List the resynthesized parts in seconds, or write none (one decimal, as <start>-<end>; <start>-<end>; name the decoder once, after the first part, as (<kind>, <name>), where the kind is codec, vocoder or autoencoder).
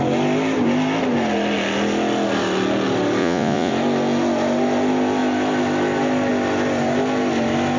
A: 3.2-3.7 (vocoder, Vocos)